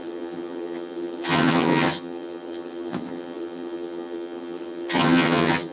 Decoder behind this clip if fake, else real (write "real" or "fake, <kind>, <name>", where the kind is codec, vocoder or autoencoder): fake, vocoder, HiFi-GAN